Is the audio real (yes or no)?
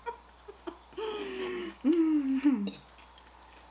yes